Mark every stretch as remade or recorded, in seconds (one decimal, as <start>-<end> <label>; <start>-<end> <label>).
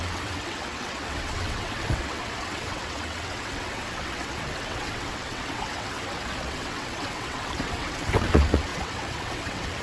0.0-9.8 remade